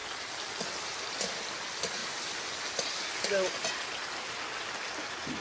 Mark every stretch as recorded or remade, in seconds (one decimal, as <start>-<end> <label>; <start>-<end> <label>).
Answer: 0.0-5.4 recorded